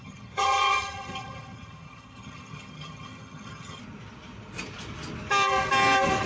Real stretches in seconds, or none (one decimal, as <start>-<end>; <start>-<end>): 3.8-6.3